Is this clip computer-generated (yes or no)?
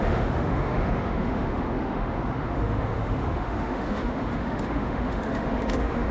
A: yes